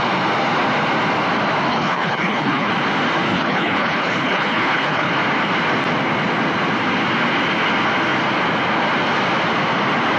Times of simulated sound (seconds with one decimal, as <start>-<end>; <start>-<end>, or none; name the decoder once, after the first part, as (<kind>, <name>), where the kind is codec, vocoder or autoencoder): 1.7-2.7 (codec, HILCodec); 3.3-5.1